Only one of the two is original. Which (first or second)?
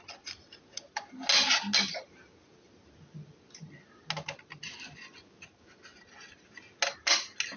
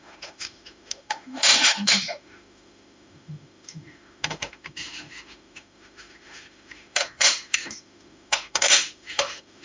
first